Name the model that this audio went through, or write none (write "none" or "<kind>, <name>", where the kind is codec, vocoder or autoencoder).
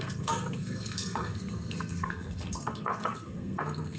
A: codec, SNAC